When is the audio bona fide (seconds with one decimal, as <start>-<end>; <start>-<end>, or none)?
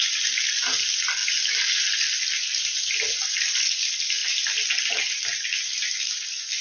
0.0-6.6